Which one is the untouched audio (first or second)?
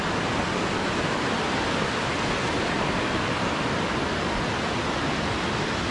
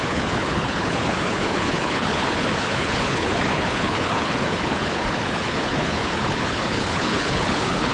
first